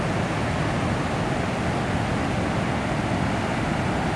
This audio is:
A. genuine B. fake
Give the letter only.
A